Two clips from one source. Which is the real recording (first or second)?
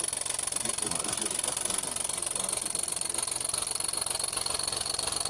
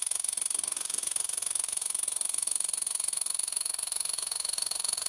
first